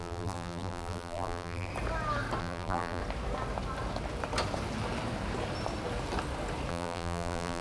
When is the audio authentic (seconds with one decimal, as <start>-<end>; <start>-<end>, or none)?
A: 1.7-2.4; 3.0-6.7